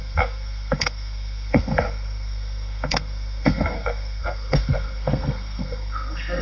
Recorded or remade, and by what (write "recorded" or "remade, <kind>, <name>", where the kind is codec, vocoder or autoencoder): remade, codec, SNAC